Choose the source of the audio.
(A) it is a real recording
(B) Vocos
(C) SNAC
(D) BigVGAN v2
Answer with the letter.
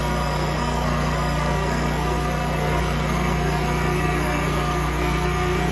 C